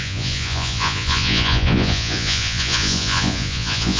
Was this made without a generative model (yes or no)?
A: no